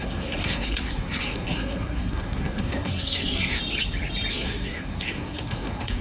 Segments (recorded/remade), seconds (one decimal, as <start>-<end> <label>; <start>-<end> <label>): 0.0-3.6 remade; 3.6-4.3 recorded; 4.3-6.0 remade